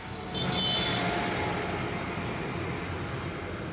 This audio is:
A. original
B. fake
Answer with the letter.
A